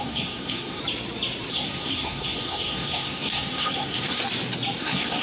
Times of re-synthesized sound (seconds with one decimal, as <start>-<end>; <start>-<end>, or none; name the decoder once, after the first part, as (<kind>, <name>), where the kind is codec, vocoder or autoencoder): 0.0-0.8 (codec, SNAC); 1.5-4.2; 4.8-5.2